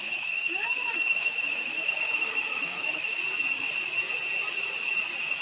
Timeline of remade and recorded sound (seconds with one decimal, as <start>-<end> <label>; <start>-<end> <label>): 0.0-3.2 remade; 3.2-5.4 recorded